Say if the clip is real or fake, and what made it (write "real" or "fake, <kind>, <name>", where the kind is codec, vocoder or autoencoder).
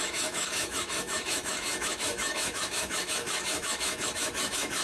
fake, autoencoder, DAC-VAE